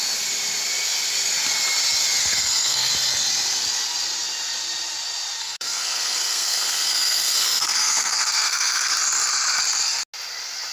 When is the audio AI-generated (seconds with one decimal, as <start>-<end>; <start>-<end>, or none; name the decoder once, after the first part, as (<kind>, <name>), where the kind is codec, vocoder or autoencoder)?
2.2-2.9 (codec, SNAC); 5.4-8.9